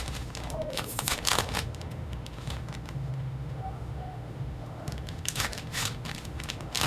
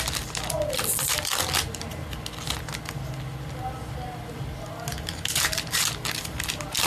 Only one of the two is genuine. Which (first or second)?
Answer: second